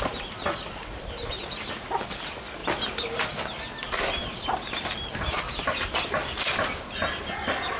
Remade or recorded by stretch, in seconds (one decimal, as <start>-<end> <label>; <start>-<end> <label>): 0.0-7.8 recorded